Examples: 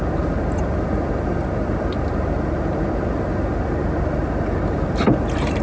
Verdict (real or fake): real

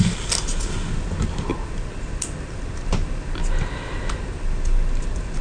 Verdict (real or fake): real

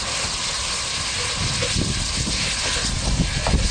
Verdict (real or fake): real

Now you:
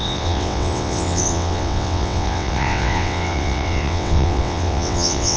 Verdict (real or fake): fake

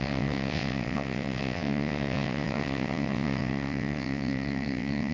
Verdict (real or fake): fake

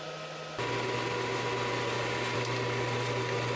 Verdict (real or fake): real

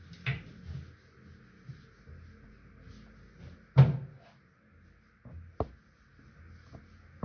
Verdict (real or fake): real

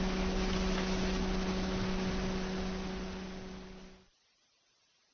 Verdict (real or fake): real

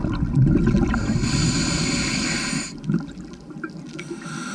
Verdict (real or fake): real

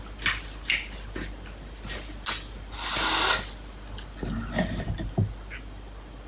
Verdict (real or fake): real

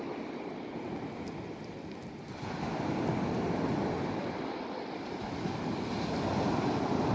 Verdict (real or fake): real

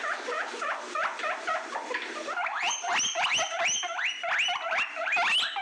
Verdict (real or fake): real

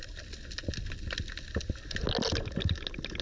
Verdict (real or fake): real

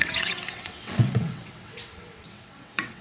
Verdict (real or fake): fake